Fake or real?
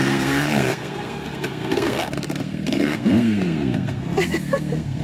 fake